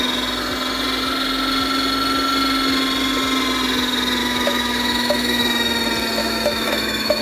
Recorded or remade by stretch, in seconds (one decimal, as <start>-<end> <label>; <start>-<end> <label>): 0.0-4.2 recorded; 4.2-5.4 remade; 5.4-6.2 recorded; 6.2-7.2 remade